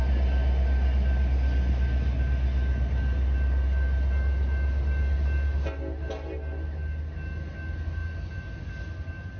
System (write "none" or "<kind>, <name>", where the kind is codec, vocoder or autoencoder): none